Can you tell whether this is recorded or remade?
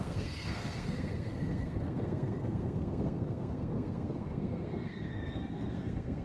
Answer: remade